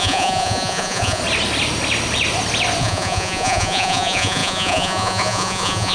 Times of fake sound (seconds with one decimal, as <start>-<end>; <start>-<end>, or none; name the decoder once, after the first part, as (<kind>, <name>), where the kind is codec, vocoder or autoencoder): 0.0-1.2 (vocoder, Vocos); 2.8-5.9